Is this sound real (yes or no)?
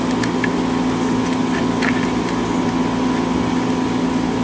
yes